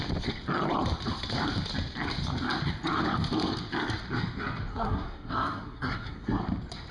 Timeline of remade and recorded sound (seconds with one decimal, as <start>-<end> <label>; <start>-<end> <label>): 0.0-4.7 recorded; 4.7-6.4 remade; 6.4-6.9 recorded